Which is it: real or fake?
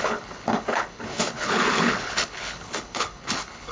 fake